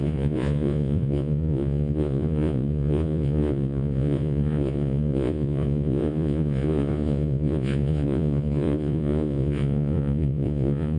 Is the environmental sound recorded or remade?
remade